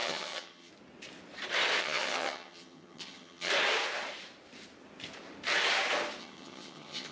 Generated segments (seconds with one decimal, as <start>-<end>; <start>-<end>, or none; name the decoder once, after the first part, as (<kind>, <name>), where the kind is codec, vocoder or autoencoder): 0.0-0.7 (vocoder, HiFi-GAN); 1.8-3.5; 6.2-7.1